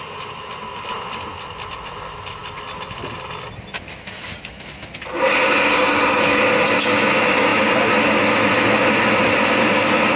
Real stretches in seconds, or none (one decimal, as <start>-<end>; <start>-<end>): 0.0-10.2